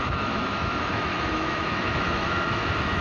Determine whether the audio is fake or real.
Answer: fake